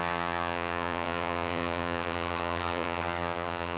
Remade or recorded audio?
remade